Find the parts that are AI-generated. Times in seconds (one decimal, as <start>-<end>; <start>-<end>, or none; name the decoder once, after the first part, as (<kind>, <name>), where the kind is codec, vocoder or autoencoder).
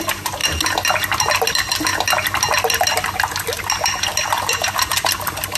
none